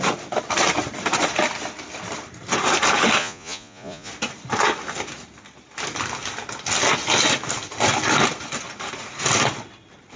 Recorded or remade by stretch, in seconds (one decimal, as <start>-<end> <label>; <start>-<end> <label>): 0.0-3.2 recorded; 3.2-4.1 remade; 4.1-10.2 recorded